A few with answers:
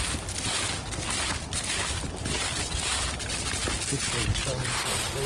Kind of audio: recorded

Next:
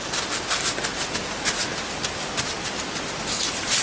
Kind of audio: recorded